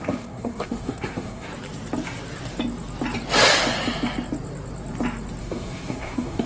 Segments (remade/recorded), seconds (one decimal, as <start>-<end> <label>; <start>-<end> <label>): 0.0-1.5 remade; 1.5-5.4 recorded; 5.4-6.5 remade